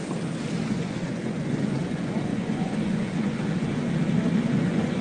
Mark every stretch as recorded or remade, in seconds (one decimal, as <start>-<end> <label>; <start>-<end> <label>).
0.0-0.7 recorded; 0.7-3.8 remade; 3.8-4.5 recorded; 4.5-5.0 remade